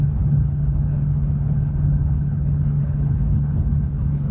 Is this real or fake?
fake